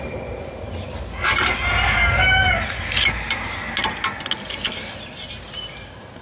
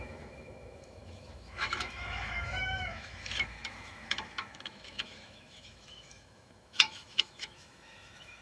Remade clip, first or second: second